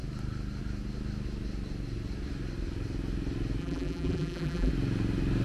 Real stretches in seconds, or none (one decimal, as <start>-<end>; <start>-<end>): 0.0-3.6; 4.7-5.4

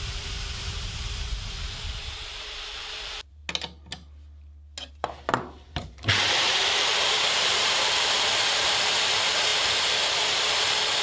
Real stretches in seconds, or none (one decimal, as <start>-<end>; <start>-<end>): 3.4-4.9

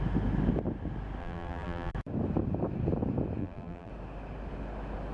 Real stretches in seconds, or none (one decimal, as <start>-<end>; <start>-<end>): 0.0-1.2; 1.9-3.4; 3.9-5.1